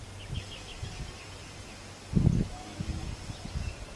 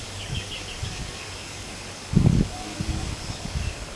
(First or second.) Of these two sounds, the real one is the first